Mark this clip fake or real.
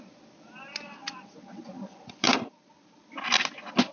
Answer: real